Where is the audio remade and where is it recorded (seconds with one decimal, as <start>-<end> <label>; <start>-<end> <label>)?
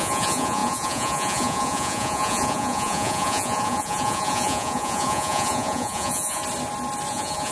0.0-6.4 remade; 6.4-7.1 recorded; 7.1-7.5 remade